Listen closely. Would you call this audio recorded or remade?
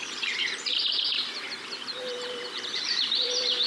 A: remade